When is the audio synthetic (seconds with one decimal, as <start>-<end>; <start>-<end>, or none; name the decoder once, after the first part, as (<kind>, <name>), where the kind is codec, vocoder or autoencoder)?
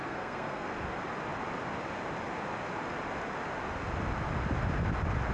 0.0-0.7 (codec, SNAC)